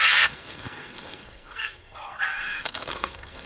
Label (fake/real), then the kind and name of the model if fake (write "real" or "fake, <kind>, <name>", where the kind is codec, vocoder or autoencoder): fake, codec, SNAC